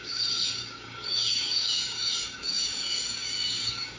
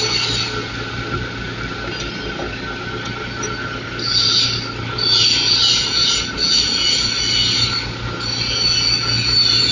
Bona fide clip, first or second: second